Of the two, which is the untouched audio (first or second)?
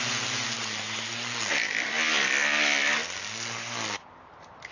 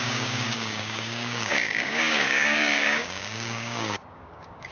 first